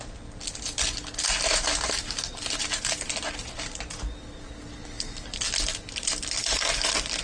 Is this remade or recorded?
recorded